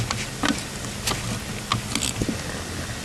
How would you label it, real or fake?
real